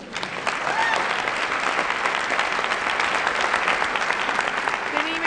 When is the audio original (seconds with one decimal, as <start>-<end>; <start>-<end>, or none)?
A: 0.0-5.3